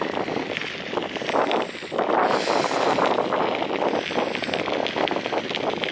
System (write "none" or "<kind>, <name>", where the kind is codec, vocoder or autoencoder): none